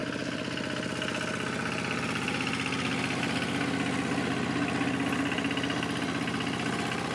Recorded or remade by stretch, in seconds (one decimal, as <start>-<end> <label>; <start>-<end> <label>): 0.0-7.1 recorded